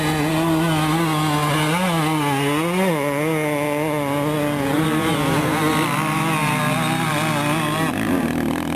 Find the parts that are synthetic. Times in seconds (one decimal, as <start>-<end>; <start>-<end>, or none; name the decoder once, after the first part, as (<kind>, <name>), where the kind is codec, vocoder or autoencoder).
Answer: none